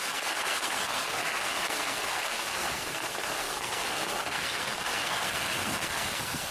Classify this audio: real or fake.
fake